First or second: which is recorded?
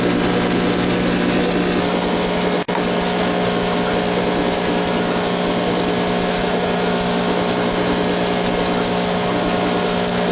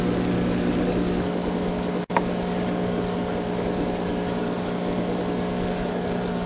first